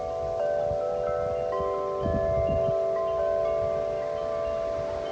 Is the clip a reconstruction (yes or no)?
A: no